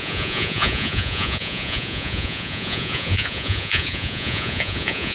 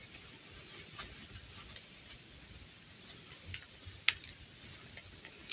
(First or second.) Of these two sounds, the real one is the second